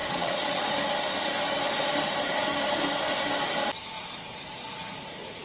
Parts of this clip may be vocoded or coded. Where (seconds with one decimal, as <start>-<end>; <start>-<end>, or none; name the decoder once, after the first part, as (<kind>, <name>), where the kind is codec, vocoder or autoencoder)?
0.0-0.6 (vocoder, Vocos)